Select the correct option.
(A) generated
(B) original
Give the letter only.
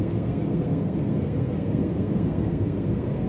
A